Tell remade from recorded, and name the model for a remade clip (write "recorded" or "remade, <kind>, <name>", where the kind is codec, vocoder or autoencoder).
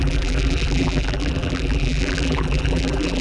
remade, vocoder, BigVGAN v2